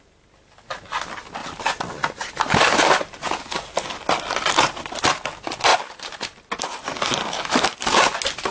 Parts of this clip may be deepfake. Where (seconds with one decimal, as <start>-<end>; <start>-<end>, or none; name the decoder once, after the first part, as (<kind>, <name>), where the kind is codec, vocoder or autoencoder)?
none